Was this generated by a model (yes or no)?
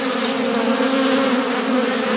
no